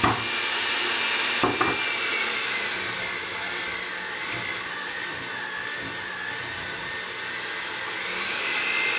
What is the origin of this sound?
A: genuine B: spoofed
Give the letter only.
A